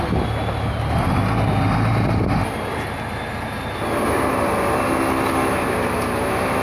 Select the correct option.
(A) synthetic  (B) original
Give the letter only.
B